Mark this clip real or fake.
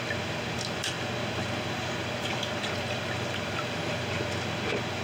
real